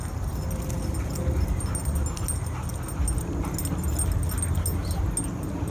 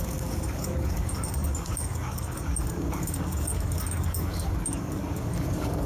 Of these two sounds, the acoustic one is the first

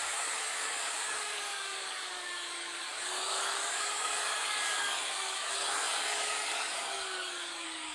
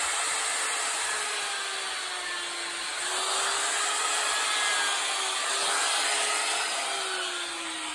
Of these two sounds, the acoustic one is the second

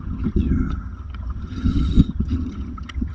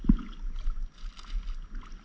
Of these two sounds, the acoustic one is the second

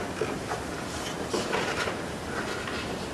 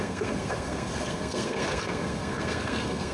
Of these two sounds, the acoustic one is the first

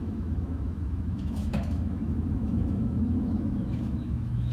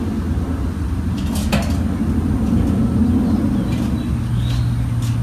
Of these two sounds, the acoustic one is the second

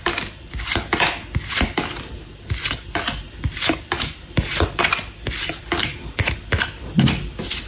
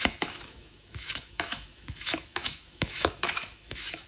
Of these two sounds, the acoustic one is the first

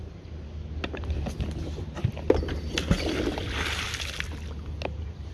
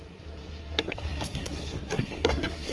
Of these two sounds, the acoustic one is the first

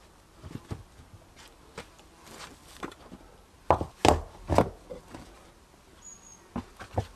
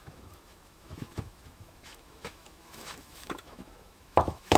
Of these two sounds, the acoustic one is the first